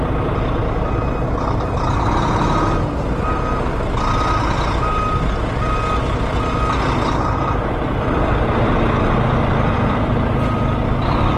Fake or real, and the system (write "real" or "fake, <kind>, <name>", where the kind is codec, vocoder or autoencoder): real